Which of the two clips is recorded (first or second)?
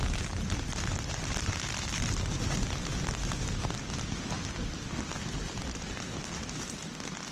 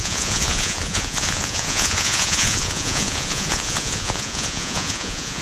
first